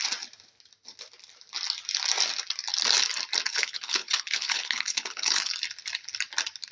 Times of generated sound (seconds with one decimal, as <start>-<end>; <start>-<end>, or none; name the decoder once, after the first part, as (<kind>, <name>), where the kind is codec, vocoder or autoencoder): 3.5-5.5 (codec, HILCodec)